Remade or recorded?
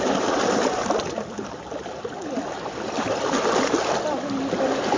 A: recorded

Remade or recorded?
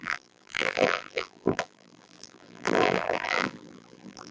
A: remade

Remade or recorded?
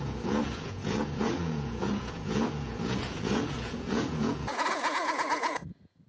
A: remade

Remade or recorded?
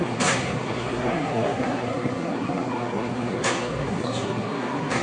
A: remade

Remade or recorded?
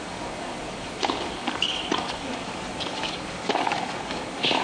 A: remade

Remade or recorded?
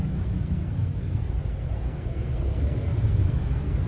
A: remade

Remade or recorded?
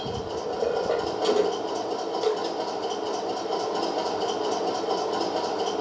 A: recorded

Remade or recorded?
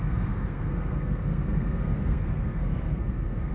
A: remade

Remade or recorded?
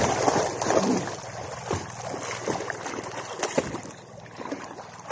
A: recorded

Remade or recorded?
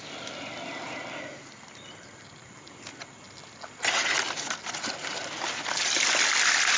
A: recorded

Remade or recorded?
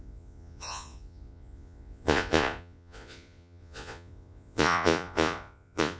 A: remade